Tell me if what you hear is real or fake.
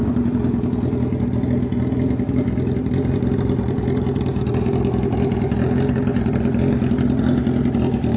real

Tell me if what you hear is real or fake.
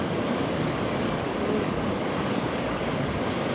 fake